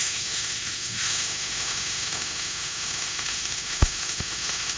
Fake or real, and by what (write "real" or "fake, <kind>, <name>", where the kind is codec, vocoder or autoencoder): fake, autoencoder, DAC-VAE